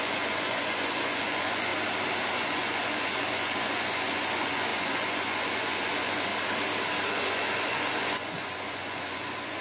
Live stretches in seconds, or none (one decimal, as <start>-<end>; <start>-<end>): 1.7-2.3; 6.3-7.1